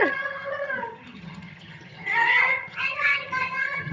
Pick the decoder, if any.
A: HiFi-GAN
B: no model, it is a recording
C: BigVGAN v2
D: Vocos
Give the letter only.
A